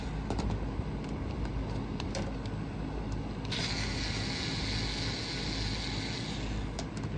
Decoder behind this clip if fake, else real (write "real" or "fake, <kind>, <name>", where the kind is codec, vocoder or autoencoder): real